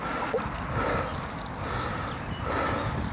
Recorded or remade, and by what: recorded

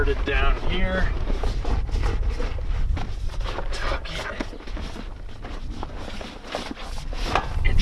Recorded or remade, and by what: recorded